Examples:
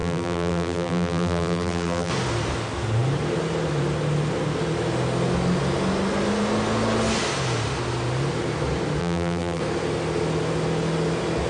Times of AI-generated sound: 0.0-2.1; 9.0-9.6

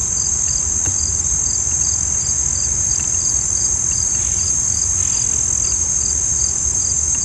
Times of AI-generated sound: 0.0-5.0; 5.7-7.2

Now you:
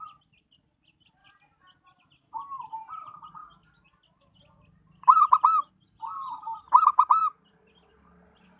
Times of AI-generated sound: none

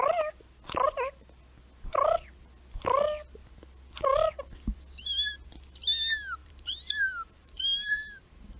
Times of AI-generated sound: 6.4-8.6

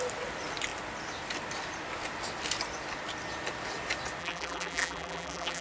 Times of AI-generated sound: 4.2-5.6